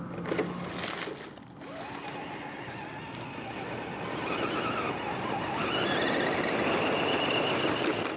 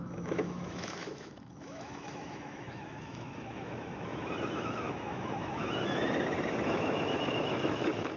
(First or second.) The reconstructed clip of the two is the second